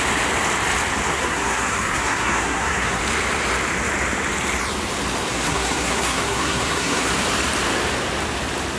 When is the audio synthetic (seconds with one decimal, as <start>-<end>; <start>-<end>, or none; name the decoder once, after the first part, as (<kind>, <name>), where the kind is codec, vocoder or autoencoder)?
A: 1.1-3.0 (codec, SNAC); 5.3-7.1